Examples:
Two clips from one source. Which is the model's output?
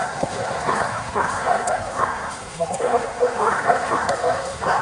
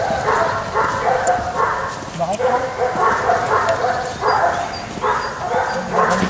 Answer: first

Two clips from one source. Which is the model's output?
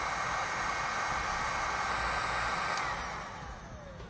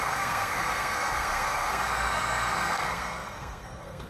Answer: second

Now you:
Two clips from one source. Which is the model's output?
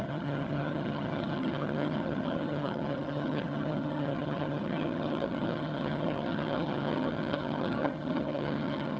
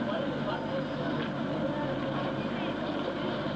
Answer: first